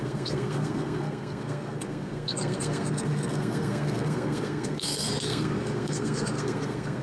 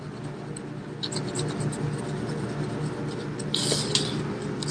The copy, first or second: first